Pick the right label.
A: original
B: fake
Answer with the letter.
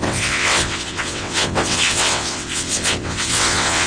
B